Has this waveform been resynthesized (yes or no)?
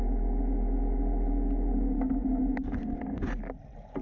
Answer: no